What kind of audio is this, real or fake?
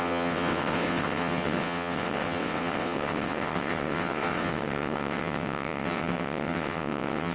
fake